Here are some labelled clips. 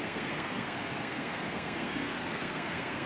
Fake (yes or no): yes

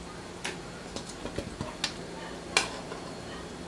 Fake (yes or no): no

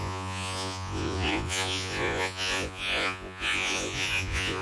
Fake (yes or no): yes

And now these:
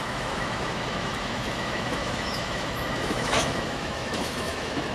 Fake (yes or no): yes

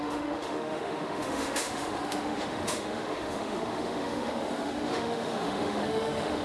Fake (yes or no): yes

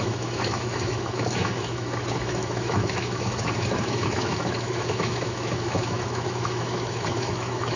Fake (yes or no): yes